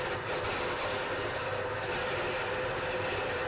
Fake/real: real